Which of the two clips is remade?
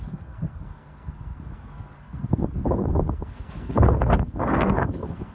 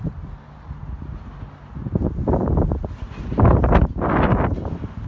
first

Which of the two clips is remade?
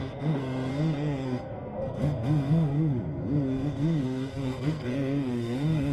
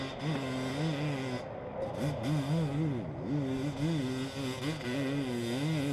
first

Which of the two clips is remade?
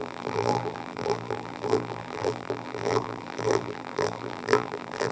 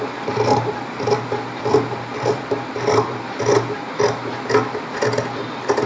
first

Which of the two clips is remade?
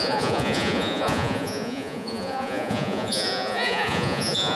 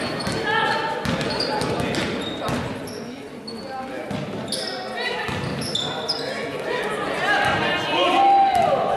first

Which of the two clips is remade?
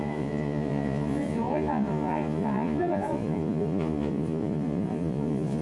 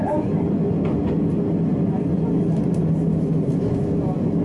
first